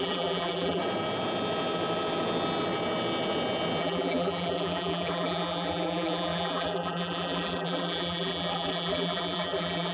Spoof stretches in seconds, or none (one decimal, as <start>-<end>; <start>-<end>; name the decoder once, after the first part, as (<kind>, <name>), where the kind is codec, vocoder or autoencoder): 0.0-0.8 (vocoder, BigVGAN v2); 3.8-9.9